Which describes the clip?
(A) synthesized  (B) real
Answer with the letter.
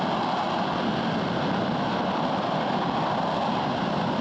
B